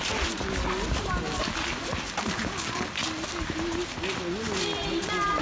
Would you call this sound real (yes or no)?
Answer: yes